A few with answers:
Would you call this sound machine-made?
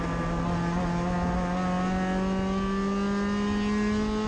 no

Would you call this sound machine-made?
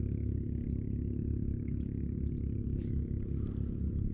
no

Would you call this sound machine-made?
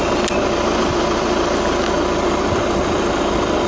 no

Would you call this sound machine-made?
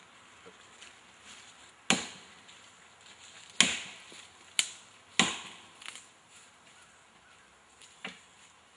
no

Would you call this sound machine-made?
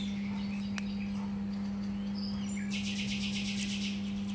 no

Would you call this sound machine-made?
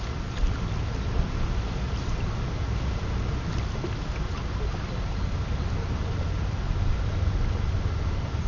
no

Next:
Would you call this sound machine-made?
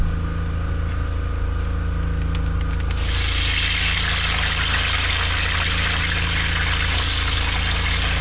no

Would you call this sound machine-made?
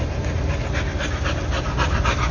no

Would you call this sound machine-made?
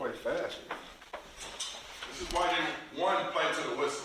no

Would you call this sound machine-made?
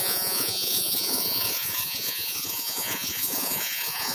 yes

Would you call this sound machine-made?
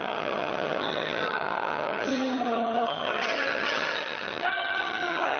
yes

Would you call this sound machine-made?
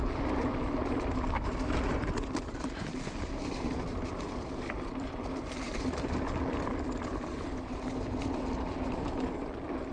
yes